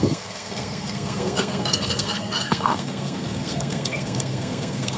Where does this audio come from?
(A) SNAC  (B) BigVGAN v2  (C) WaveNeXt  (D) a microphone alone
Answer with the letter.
A